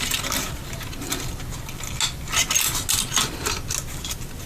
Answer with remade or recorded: recorded